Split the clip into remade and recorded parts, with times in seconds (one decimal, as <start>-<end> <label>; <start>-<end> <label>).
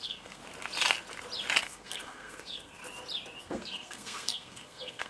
0.0-0.4 remade; 0.4-1.6 recorded; 1.6-2.8 remade; 2.8-3.4 recorded; 3.4-5.1 remade